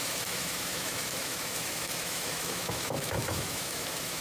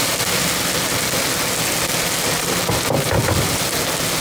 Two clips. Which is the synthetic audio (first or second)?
first